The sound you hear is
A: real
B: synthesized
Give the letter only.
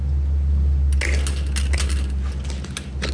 A